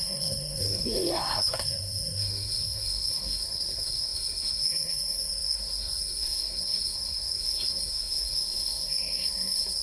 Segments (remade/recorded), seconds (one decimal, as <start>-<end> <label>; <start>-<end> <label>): 0.0-9.8 remade